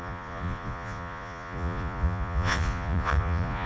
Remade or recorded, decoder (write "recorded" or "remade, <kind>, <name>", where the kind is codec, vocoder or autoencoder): remade, vocoder, Vocos